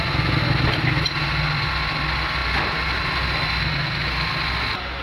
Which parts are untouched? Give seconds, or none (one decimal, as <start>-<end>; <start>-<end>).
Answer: 0.0-5.0